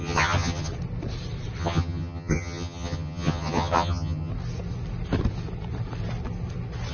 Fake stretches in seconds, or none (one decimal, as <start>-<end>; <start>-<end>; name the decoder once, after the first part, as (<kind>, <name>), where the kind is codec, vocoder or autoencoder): 0.0-0.7 (vocoder, HiFi-GAN); 1.6-4.3